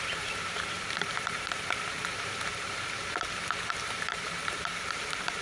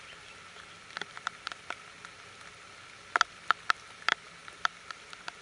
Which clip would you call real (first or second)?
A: second